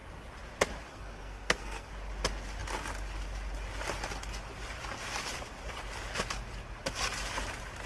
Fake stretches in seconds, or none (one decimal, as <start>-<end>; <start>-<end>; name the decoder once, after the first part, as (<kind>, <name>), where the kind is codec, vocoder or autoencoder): 0.9-1.9 (codec, SNAC)

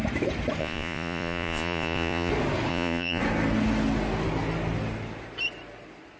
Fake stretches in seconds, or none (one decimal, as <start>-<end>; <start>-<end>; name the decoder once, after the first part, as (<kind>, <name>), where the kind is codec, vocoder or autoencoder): 0.6-2.3 (vocoder, Vocos); 2.7-3.2

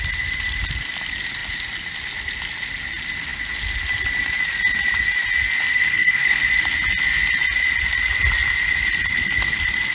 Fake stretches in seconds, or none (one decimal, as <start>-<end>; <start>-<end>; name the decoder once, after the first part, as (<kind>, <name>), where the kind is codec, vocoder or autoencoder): 5.7-6.4 (codec, SNAC)

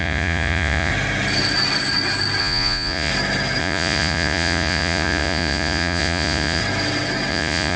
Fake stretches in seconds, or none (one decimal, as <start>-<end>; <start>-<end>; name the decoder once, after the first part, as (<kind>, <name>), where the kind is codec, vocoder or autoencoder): 0.0-0.9 (vocoder, Vocos); 2.4-3.1; 3.6-6.6; 7.3-7.8

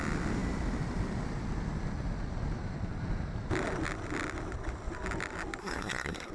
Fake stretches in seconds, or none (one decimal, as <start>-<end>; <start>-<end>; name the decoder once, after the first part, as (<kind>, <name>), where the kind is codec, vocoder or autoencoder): 5.6-6.3 (codec, SNAC)

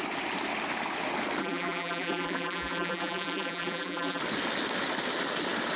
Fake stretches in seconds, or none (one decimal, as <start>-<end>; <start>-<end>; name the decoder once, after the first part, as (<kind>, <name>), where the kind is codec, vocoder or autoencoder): 1.4-4.2 (vocoder, BigVGAN v2)